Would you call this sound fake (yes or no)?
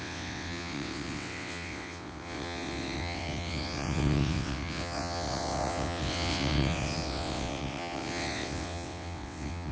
yes